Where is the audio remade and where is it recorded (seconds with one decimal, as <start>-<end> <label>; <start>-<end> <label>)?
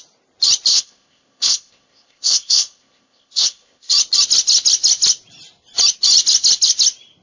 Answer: 0.0-0.7 recorded; 0.7-3.9 remade; 3.9-7.2 recorded